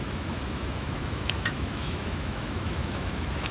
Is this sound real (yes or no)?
no